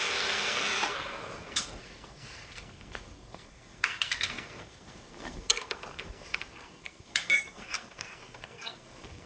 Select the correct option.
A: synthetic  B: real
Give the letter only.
A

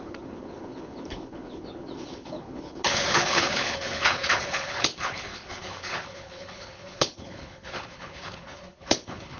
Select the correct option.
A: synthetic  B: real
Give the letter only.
A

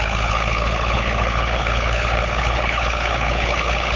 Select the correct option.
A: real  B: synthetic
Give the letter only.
B